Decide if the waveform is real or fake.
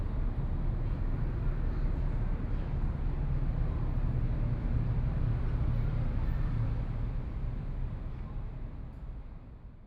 real